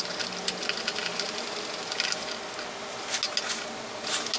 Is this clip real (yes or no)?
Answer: yes